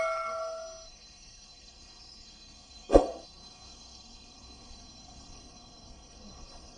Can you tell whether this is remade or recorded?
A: remade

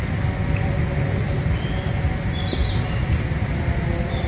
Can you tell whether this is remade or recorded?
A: recorded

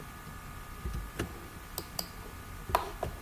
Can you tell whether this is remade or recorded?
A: recorded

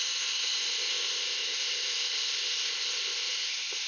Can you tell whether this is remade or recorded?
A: remade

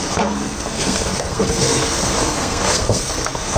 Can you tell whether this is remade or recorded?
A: remade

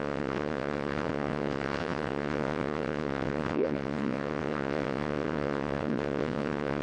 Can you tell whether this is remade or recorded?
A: remade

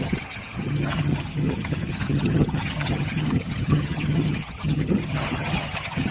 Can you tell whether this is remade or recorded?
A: remade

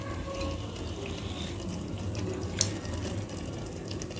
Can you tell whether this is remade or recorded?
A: recorded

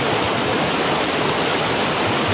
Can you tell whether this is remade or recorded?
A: recorded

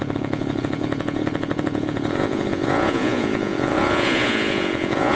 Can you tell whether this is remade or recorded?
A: remade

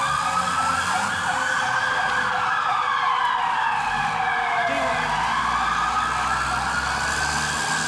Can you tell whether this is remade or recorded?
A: recorded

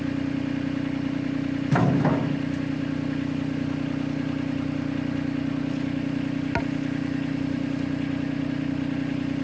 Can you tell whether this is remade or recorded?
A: recorded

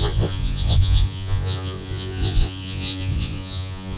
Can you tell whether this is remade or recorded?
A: remade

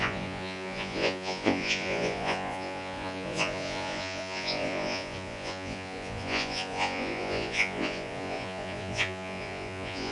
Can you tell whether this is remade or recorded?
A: remade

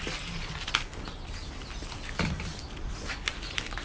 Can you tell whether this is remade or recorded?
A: recorded